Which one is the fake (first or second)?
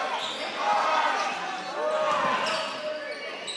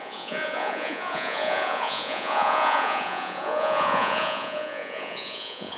second